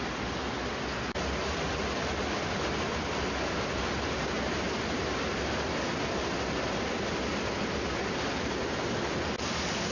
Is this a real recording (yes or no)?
yes